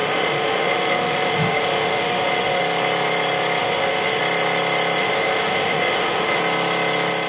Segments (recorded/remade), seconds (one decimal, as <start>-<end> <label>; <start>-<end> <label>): 0.0-2.6 remade; 2.6-3.6 recorded; 3.6-4.2 remade; 4.2-5.0 recorded; 5.0-6.4 remade; 6.4-7.3 recorded